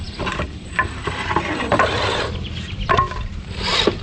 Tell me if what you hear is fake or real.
fake